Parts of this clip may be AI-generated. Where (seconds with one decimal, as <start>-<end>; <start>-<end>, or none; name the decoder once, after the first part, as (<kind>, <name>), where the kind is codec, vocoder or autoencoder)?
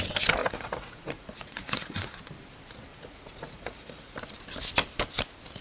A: 0.4-2.1 (vocoder, Vocos); 2.9-4.2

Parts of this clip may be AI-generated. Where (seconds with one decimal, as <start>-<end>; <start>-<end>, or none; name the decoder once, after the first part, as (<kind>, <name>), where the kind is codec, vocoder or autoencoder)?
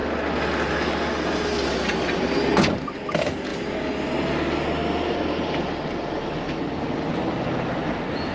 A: none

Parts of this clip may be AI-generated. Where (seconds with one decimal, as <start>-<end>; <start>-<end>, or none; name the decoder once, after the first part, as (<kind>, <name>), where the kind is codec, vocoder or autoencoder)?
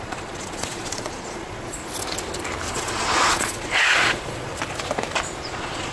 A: 0.0-1.8 (vocoder, Vocos); 2.7-4.5; 5.4-5.9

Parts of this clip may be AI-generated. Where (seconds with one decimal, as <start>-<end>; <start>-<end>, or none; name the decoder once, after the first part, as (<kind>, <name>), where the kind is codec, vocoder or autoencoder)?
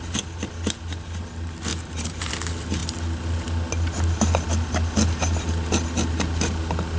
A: 1.7-2.3 (vocoder, BigVGAN v2)